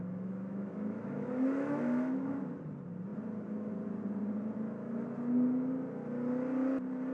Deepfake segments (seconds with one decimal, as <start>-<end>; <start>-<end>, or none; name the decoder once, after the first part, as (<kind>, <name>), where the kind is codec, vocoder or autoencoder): 0.0-2.4 (autoencoder, DAC-VAE)